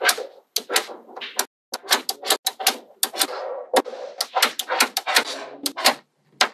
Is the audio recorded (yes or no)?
yes